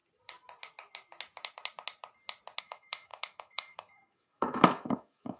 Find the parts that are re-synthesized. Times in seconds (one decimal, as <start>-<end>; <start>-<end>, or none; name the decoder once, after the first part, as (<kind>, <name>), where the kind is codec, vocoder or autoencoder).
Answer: 2.6-5.4 (autoencoder, DAC-VAE)